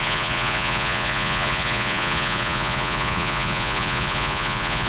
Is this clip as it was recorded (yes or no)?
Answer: no